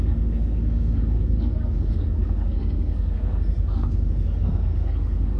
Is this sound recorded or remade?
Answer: remade